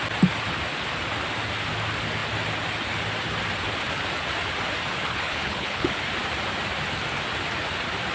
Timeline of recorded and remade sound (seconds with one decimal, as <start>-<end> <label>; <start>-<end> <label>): 0.0-5.0 recorded; 5.0-6.0 remade; 6.0-8.1 recorded